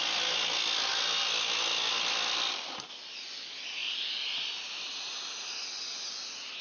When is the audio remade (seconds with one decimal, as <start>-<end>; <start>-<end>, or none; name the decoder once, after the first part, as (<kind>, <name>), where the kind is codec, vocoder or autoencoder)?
none